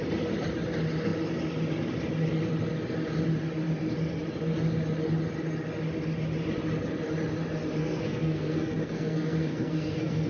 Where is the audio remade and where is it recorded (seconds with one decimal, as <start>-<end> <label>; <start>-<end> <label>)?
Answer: 0.0-7.8 recorded; 7.8-10.3 remade